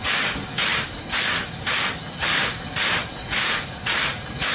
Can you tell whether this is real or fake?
real